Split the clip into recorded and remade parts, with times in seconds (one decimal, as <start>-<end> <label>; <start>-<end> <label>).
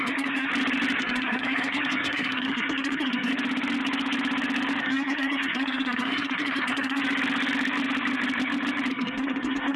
0.0-0.5 remade; 0.5-1.0 recorded; 1.0-3.3 remade; 3.3-4.8 recorded; 4.8-7.0 remade; 7.0-8.9 recorded; 8.9-9.8 remade